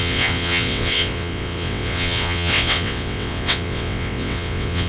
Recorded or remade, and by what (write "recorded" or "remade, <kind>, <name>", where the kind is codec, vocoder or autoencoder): remade, vocoder, WaveNeXt